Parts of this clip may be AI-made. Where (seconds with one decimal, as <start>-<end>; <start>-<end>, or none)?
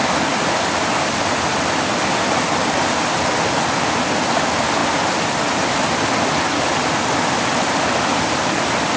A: none